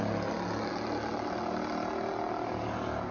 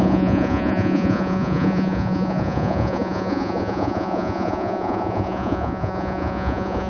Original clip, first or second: first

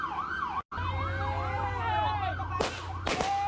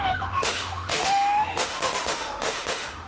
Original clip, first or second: first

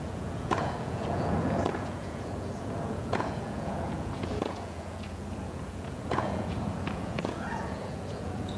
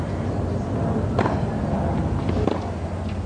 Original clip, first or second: second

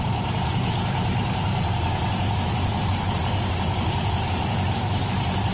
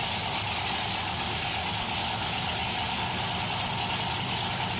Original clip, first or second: second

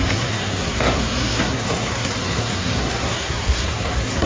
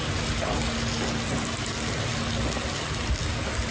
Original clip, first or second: second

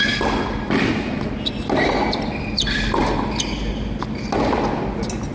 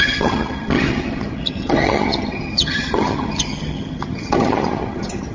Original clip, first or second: first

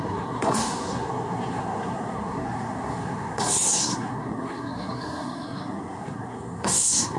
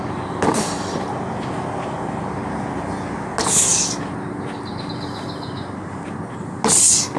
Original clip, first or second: second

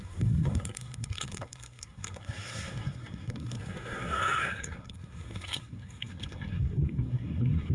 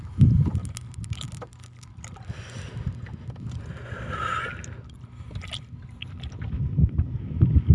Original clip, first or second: second